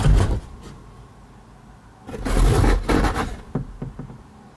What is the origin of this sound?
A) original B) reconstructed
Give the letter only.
A